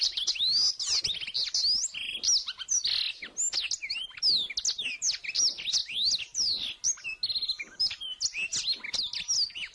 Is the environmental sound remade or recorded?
recorded